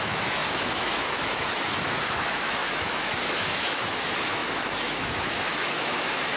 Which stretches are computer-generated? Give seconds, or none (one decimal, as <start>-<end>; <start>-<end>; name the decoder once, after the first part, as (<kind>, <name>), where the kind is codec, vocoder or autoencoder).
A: 0.0-6.4 (autoencoder, DAC-VAE)